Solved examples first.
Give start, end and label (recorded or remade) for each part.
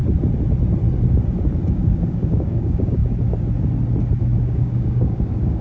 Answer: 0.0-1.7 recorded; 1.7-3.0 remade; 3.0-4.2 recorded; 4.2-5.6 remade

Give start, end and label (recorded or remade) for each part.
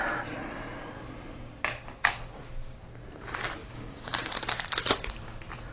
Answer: 0.0-3.6 recorded; 3.6-4.3 remade; 4.3-5.7 recorded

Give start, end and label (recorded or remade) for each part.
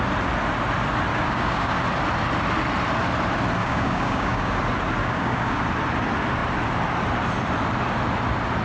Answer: 0.0-1.1 recorded; 1.1-1.8 remade; 1.8-3.6 recorded; 3.6-4.6 remade; 4.6-5.0 recorded; 5.0-5.6 remade; 5.6-8.6 recorded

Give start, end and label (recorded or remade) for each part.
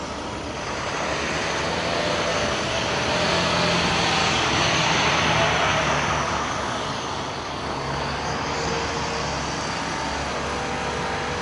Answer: 0.0-2.3 recorded; 2.3-2.9 remade; 2.9-4.2 recorded; 4.2-4.9 remade; 4.9-5.7 recorded; 5.7-8.7 remade; 8.7-11.4 recorded